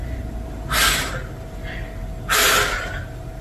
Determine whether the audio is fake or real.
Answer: real